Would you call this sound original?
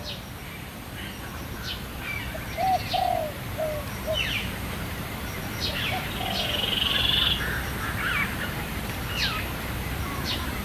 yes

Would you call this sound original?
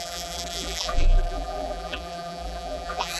no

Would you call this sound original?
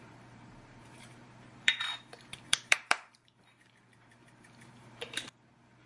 no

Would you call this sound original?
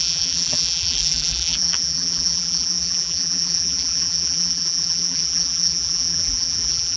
no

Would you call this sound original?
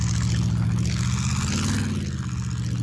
yes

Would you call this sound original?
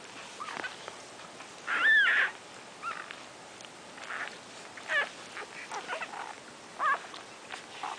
yes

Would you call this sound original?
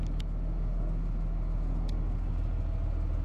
yes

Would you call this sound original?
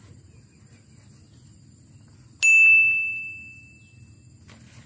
yes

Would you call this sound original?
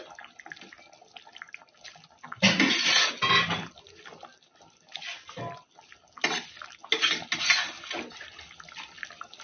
yes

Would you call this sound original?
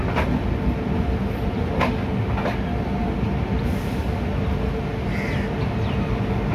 yes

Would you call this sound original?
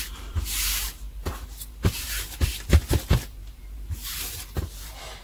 no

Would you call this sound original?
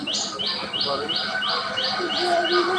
yes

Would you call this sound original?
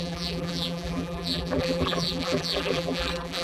no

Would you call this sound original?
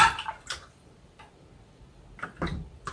no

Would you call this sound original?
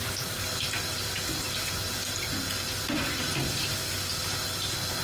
yes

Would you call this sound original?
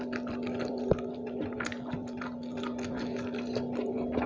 yes